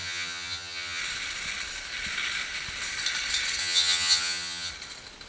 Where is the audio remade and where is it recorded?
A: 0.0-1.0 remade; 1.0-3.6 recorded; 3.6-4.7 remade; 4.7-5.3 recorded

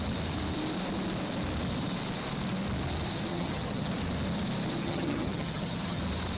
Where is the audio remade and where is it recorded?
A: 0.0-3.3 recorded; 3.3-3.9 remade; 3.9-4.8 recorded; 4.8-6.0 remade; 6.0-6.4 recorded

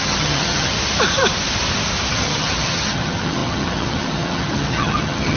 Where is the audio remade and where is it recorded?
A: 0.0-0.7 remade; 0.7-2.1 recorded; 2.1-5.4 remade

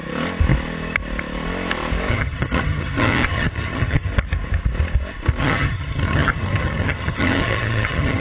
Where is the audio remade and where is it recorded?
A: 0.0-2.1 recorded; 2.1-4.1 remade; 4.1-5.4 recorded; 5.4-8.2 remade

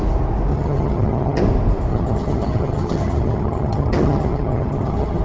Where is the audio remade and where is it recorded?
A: 0.0-0.5 recorded; 0.5-1.4 remade; 1.4-1.9 recorded; 1.9-5.2 remade

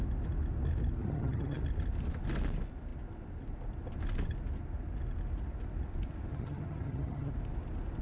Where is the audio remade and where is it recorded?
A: 0.0-1.0 recorded; 1.0-1.6 remade; 1.6-6.3 recorded; 6.3-7.3 remade; 7.3-8.0 recorded